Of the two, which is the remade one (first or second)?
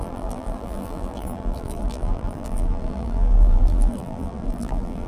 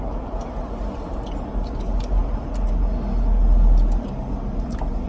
first